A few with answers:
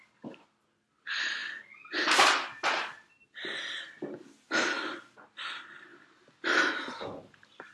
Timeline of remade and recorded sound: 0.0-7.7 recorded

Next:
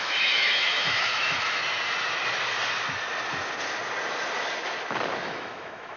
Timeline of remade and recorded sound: 0.0-1.6 remade; 1.6-5.2 recorded; 5.2-6.0 remade

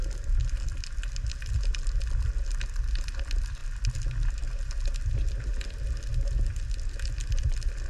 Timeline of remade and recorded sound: 0.0-7.9 recorded

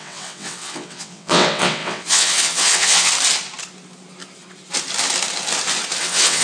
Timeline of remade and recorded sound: 0.0-3.1 remade; 3.1-6.0 recorded; 6.0-6.4 remade

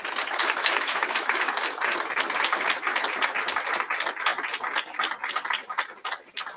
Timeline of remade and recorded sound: 0.0-0.4 recorded; 0.4-1.5 remade; 1.5-6.6 recorded

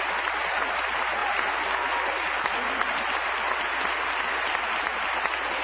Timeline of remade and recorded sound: 0.0-5.6 recorded

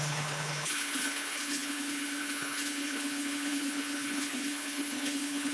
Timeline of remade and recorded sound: 0.0-5.5 remade

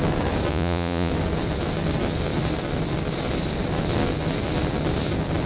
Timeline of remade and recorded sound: 0.0-0.5 recorded; 0.5-1.1 remade; 1.1-5.5 recorded